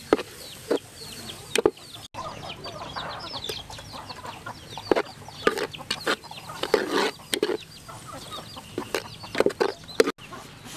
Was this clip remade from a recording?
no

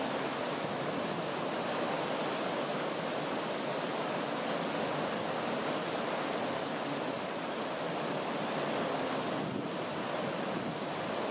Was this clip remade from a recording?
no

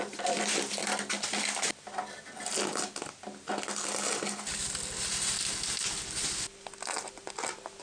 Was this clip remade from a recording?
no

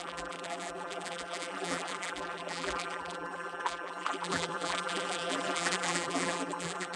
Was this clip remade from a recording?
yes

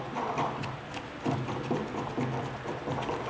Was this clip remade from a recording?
no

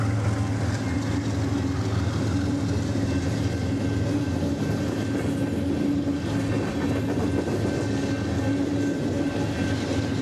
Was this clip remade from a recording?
no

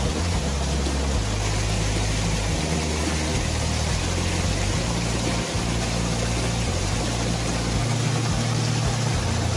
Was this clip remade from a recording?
no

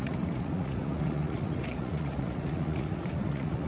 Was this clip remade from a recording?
yes